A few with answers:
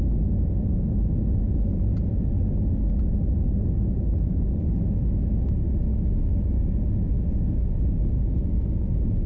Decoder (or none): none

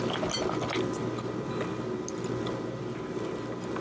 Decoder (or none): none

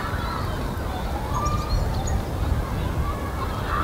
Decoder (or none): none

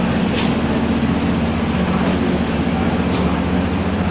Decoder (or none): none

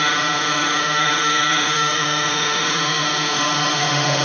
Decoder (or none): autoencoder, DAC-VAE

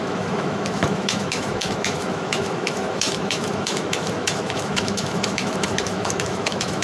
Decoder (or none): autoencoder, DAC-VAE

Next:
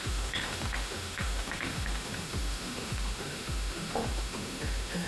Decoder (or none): autoencoder, DAC-VAE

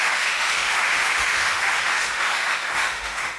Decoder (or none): autoencoder, DAC-VAE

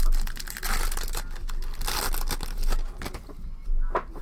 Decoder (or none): none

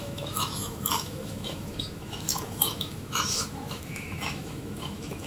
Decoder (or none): autoencoder, DAC-VAE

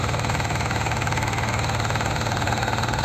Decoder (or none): autoencoder, DAC-VAE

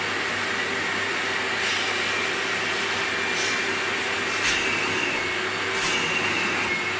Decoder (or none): none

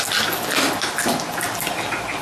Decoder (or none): none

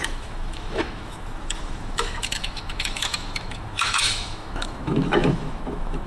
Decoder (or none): autoencoder, DAC-VAE